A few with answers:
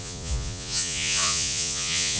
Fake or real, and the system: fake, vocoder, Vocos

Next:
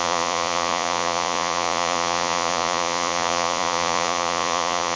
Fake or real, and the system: fake, vocoder, Vocos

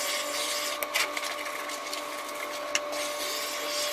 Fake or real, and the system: real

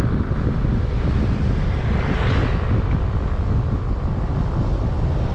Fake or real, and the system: real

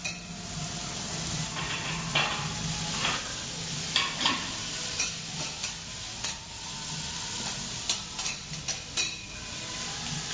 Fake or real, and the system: real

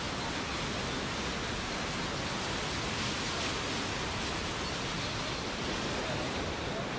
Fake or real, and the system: real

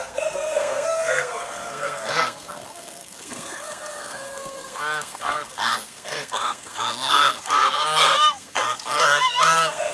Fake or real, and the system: fake, codec, SNAC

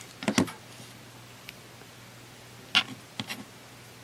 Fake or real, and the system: real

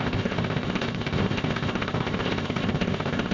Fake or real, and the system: fake, codec, ZipCodec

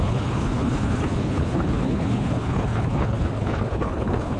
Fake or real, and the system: fake, codec, HILCodec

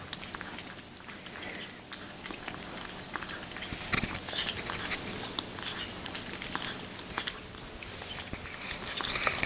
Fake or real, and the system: real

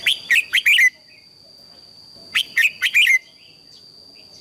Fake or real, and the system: real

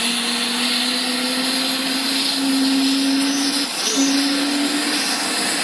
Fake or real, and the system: real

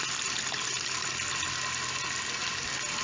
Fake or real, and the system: real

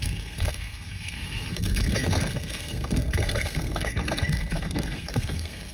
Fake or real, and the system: fake, codec, SNAC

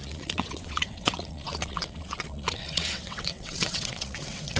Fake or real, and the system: fake, vocoder, WaveNeXt